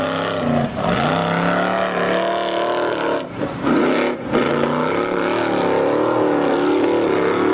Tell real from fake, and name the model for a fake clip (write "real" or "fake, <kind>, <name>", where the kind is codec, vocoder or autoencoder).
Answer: real